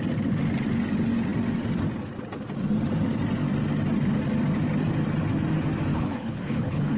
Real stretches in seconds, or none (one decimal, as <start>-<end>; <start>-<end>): 0.0-5.9